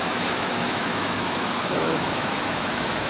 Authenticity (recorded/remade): remade